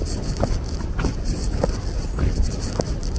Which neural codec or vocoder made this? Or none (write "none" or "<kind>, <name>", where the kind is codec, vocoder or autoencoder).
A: none